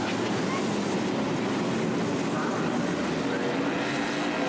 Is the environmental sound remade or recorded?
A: recorded